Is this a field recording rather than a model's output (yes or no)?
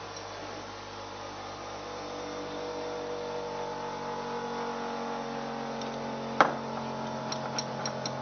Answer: yes